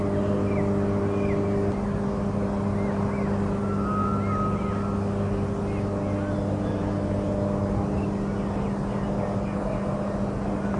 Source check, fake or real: real